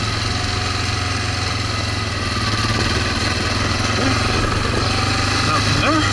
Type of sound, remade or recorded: recorded